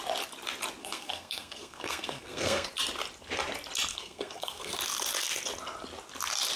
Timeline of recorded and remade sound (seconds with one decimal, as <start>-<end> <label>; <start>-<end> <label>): 0.0-0.8 recorded; 0.8-2.7 remade; 2.7-3.9 recorded; 3.9-4.7 remade; 4.7-6.6 recorded